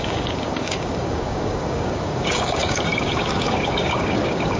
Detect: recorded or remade remade